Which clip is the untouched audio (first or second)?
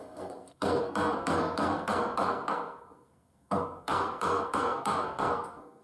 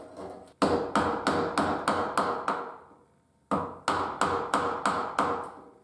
second